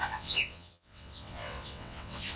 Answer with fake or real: fake